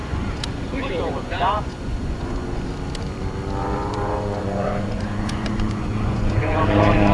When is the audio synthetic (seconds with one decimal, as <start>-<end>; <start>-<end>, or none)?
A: 0.0-2.7; 3.6-7.1